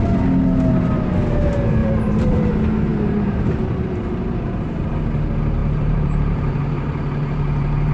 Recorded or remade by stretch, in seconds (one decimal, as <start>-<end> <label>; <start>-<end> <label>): 0.0-1.8 recorded; 1.8-2.5 remade; 2.5-2.9 recorded; 2.9-5.0 remade; 5.0-5.6 recorded; 5.6-7.9 remade